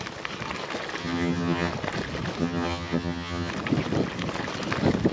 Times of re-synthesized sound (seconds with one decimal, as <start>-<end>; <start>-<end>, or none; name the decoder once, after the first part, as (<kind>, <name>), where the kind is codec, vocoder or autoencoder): 1.0-1.7 (vocoder, HiFi-GAN); 2.4-3.5